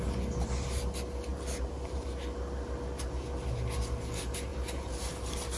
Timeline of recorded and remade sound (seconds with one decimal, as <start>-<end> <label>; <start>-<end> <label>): 0.0-1.3 recorded; 1.3-2.2 remade; 2.2-4.5 recorded; 4.5-5.6 remade